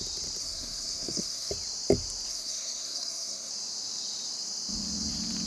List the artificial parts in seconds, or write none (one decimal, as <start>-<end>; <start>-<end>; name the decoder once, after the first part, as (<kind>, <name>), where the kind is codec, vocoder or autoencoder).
0.4-1.5 (codec, SNAC); 2.3-3.5